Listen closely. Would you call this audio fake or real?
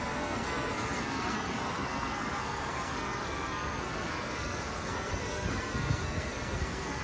fake